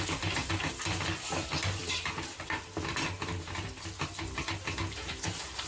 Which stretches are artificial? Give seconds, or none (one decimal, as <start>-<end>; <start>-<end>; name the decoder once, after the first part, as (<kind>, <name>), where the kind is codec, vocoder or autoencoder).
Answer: none